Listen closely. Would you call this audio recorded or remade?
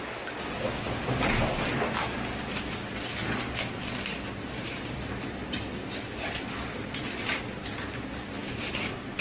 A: recorded